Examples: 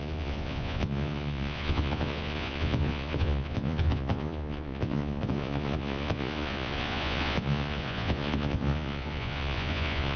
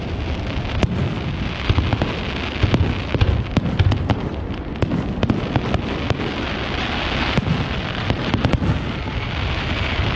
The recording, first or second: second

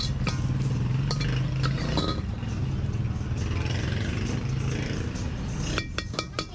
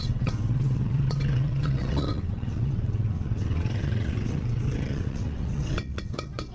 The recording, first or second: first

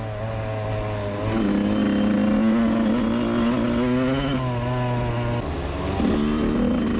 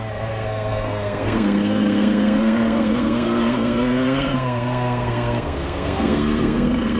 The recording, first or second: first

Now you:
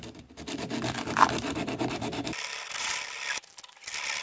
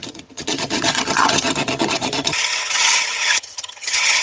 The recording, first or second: first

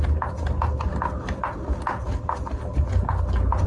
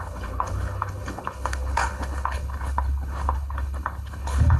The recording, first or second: first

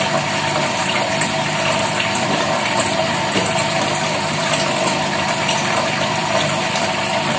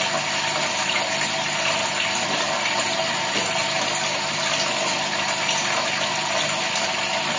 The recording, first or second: second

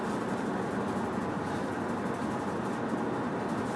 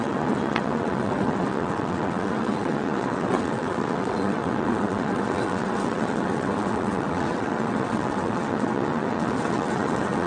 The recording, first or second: first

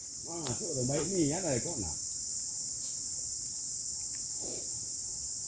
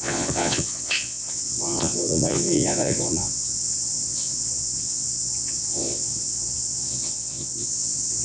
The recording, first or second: first